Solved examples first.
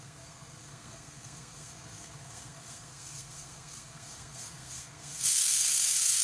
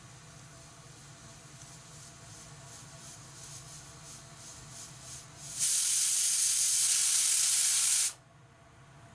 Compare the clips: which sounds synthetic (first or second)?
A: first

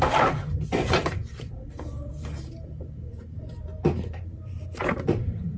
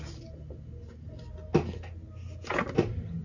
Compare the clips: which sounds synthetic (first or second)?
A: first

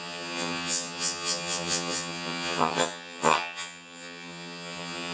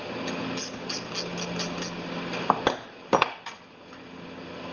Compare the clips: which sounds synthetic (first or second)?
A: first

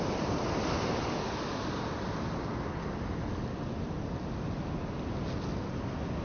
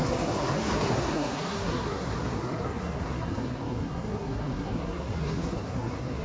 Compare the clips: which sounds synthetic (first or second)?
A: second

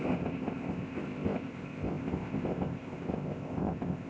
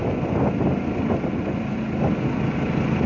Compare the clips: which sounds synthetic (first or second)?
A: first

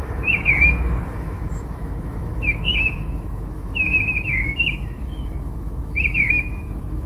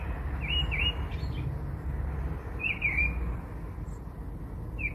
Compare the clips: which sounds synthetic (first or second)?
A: first